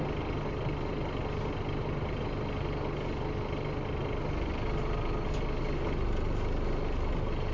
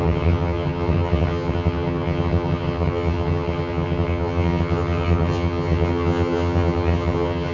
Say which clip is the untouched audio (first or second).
first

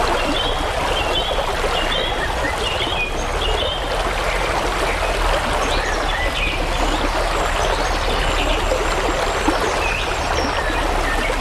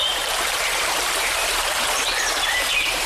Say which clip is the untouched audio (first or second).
first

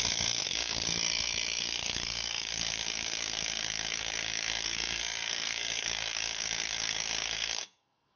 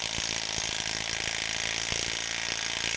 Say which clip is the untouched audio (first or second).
second